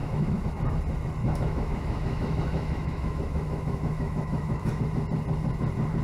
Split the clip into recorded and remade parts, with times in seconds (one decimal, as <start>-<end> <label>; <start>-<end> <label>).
0.0-0.6 remade; 0.6-1.2 recorded; 1.2-4.8 remade; 4.8-6.0 recorded